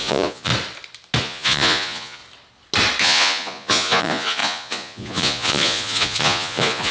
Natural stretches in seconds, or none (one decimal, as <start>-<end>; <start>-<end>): 0.5-1.2; 2.2-3.0